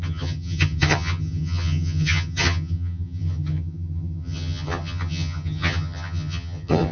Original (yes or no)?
no